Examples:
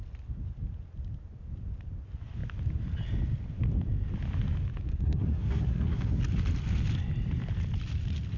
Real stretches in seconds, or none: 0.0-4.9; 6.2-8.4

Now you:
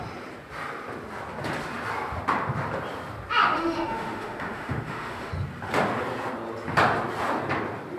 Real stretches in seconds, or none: 0.0-3.4; 5.3-8.0

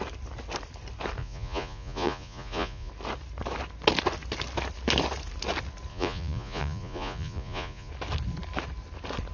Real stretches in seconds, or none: 0.0-1.2; 2.9-5.9; 7.9-9.3